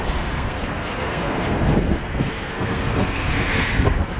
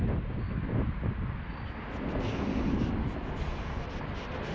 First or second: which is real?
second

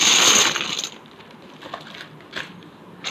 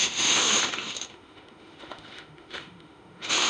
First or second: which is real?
first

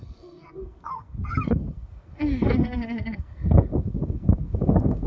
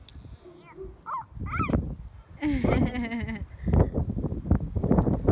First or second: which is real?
second